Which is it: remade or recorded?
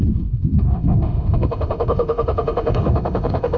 remade